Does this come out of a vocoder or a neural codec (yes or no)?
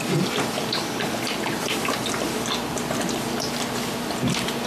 no